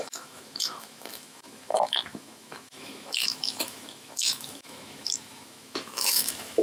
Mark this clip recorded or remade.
remade